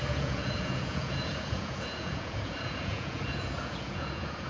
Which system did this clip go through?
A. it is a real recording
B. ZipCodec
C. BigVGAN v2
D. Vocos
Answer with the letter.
D